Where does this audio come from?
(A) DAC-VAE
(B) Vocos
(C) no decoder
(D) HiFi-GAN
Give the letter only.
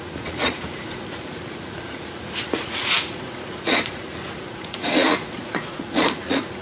B